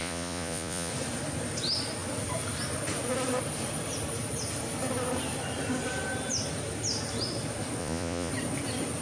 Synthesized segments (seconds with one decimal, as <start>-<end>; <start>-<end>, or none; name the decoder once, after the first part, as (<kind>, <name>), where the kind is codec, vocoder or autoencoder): 0.0-0.9 (vocoder, Vocos); 7.8-8.3